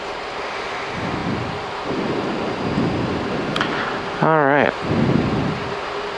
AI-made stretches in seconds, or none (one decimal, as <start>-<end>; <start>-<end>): none